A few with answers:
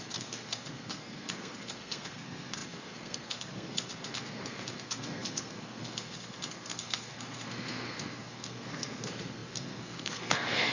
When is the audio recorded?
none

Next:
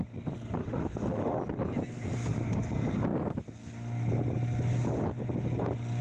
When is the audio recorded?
0.0-0.6; 1.4-6.0

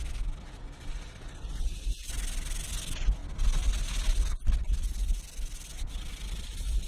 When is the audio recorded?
0.0-6.9